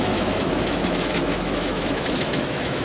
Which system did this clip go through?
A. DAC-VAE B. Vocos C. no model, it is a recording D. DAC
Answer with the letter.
A